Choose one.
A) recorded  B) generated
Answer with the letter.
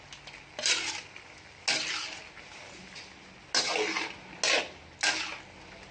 A